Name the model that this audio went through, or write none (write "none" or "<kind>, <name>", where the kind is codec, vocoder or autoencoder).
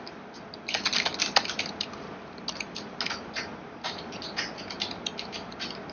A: none